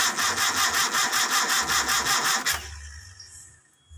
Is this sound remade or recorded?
recorded